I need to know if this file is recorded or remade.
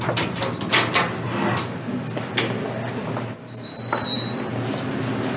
recorded